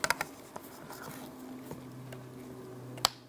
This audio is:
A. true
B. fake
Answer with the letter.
A